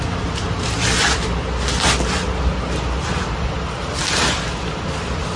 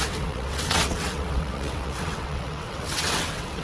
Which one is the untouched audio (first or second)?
first